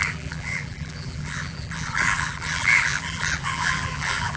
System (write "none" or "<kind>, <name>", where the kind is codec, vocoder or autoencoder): vocoder, BigVGAN v2